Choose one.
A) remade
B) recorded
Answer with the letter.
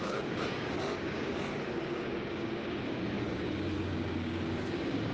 A